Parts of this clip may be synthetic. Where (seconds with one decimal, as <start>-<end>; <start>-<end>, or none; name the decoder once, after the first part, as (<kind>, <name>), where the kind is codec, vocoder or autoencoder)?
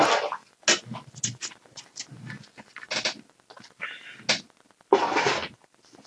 none